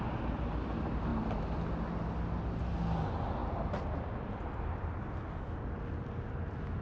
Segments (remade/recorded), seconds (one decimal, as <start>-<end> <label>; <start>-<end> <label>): 0.0-6.8 recorded